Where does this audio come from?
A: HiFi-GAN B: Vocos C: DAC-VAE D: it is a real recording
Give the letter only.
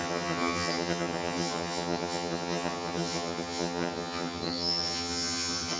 A